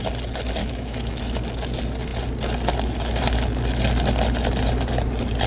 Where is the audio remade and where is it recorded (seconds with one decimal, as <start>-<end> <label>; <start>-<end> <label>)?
0.0-0.6 recorded; 0.6-1.2 remade; 1.2-5.5 recorded